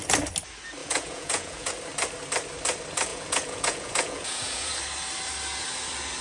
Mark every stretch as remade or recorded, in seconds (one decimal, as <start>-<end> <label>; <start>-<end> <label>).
0.0-0.8 recorded; 0.8-1.7 remade; 1.7-3.1 recorded; 3.1-4.7 remade; 4.7-6.2 recorded